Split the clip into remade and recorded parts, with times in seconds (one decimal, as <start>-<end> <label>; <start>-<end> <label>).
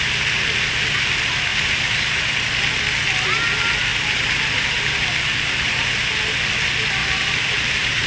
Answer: 0.0-1.5 recorded; 1.5-2.2 remade; 2.2-3.9 recorded; 3.9-5.9 remade; 5.9-7.0 recorded; 7.0-8.1 remade